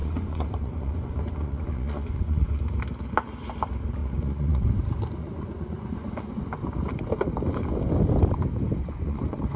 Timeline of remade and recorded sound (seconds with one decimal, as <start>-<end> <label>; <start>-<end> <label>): 0.0-2.6 remade; 2.6-4.0 recorded; 4.0-4.8 remade; 4.8-5.2 recorded; 5.2-6.4 remade; 6.4-8.8 recorded; 8.8-9.6 remade